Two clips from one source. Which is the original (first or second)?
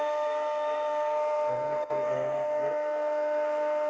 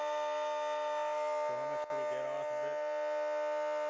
second